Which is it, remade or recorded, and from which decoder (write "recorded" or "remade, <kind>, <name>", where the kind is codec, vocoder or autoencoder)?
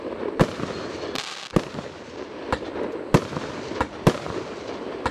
recorded